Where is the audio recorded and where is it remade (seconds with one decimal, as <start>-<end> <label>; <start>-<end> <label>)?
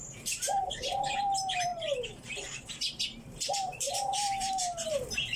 0.0-1.7 remade; 1.7-2.7 recorded; 2.7-5.4 remade